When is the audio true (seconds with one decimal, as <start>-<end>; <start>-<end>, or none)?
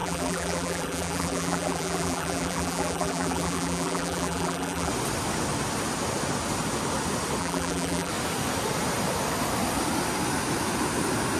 4.9-7.4; 8.1-11.4